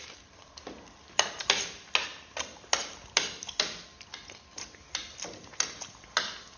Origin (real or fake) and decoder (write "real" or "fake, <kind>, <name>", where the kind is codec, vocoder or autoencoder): real